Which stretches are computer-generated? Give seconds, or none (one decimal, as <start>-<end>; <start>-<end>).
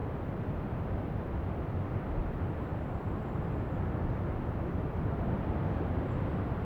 0.0-1.7; 2.7-3.6